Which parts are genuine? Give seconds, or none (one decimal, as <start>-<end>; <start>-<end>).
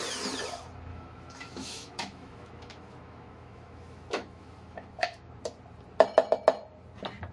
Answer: 0.0-0.9; 5.3-7.3